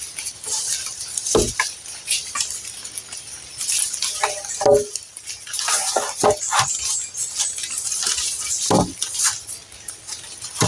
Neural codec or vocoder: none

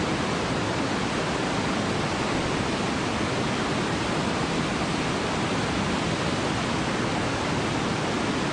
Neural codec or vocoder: none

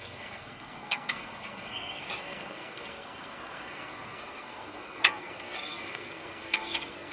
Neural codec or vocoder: codec, SNAC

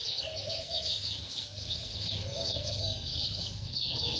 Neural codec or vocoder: codec, SNAC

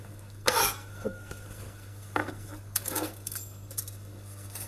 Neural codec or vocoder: codec, SNAC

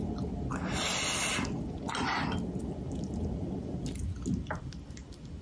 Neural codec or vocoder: none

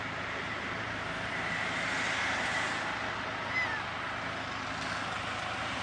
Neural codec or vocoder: none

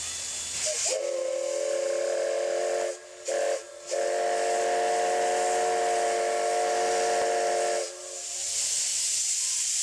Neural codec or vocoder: none